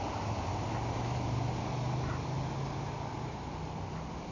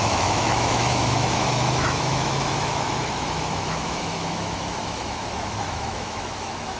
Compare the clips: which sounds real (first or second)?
first